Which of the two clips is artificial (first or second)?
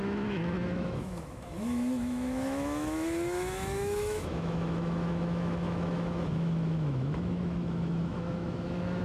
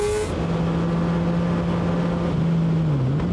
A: first